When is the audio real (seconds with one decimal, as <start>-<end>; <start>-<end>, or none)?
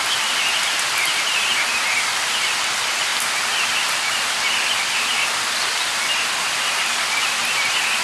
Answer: 0.0-8.0